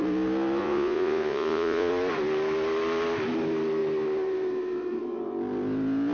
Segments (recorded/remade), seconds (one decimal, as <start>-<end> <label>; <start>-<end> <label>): 0.0-0.6 recorded; 0.6-1.9 remade; 1.9-6.1 recorded